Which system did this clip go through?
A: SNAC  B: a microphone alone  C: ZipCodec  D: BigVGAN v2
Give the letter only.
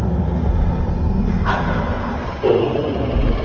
B